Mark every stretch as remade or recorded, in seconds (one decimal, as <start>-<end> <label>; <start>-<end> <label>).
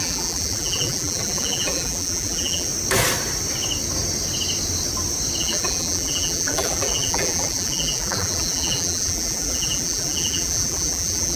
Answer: 0.0-2.7 remade; 2.7-5.4 recorded; 5.4-11.4 remade